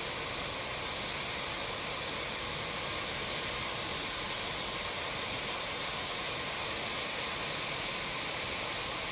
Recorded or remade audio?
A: recorded